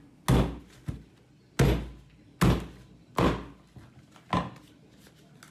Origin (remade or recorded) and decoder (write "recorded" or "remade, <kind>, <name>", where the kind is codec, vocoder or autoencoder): recorded